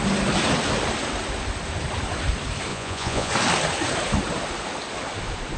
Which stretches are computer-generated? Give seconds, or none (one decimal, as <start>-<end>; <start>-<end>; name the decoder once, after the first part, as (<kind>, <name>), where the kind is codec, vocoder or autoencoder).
2.7-3.3 (vocoder, Vocos)